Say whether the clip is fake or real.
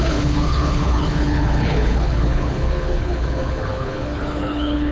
fake